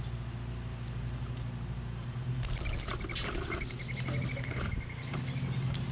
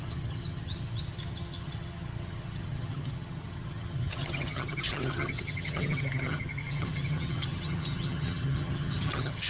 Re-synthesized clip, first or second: second